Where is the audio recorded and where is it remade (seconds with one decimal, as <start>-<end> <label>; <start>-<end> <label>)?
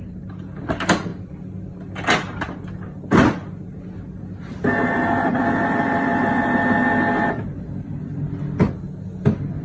0.0-9.6 recorded